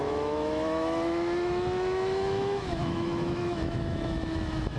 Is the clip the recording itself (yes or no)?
no